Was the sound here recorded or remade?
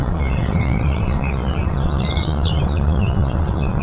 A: remade